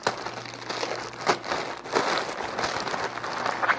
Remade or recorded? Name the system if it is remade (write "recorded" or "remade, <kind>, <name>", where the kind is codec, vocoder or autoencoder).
recorded